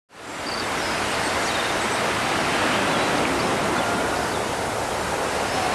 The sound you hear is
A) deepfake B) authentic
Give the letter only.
B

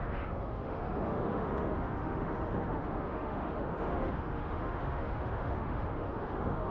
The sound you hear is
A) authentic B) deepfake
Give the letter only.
B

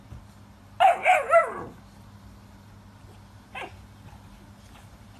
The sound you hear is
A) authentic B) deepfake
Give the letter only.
A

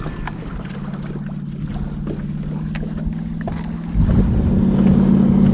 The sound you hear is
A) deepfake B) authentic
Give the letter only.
B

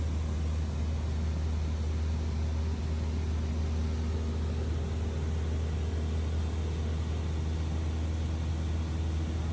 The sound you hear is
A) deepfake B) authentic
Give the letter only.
B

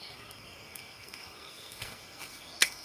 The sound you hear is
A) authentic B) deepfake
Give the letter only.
B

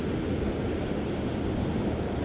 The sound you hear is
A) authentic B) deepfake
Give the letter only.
A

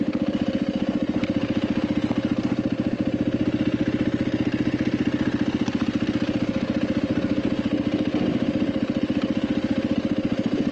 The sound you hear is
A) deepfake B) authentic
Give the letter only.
B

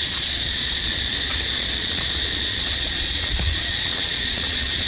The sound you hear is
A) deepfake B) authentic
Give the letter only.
A